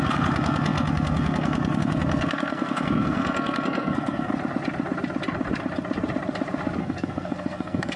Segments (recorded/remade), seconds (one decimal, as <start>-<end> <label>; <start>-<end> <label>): 0.0-4.3 remade; 4.3-6.8 recorded; 6.8-8.0 remade